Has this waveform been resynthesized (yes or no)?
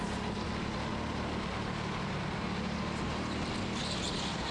no